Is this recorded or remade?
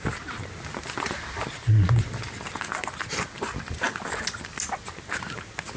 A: recorded